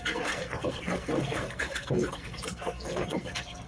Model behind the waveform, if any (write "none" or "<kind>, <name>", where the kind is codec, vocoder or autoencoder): codec, SNAC